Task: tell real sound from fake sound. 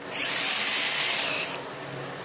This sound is real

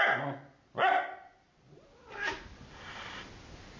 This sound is real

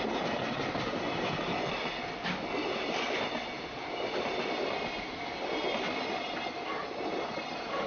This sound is real